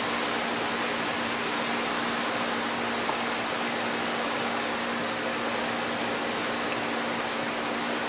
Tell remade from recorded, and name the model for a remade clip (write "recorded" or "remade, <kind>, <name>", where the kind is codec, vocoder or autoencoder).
recorded